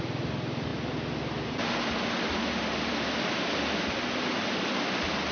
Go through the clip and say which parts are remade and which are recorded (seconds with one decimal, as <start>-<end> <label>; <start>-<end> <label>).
0.0-5.3 recorded